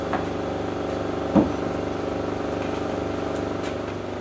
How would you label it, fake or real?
real